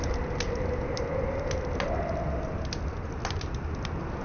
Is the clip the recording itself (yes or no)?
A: yes